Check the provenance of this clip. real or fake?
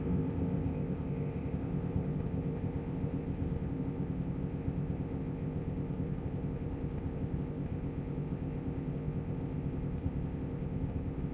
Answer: fake